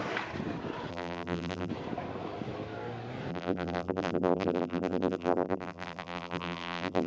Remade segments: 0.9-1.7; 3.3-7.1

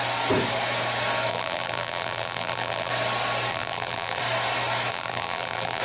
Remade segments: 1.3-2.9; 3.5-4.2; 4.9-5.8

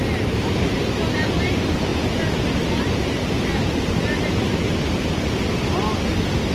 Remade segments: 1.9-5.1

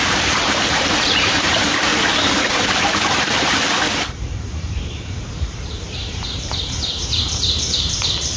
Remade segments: 0.0-1.9; 3.9-8.4

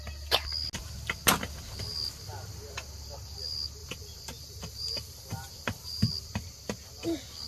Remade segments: 3.8-6.1

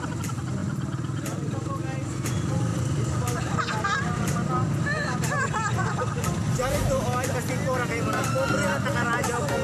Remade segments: 0.6-2.3; 2.7-4.5; 6.4-7.0

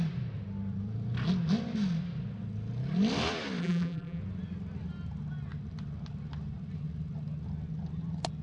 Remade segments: 3.6-4.2

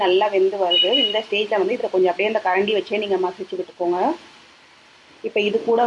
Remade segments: 0.0-1.8; 4.6-5.9